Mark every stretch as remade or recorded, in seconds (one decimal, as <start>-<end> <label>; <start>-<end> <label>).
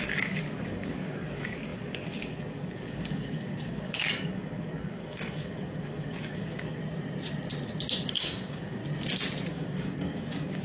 0.0-6.8 remade; 6.8-8.1 recorded; 8.1-8.8 remade; 8.8-9.5 recorded; 9.5-10.6 remade